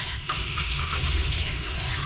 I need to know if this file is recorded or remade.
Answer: remade